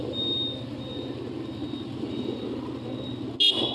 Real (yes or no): yes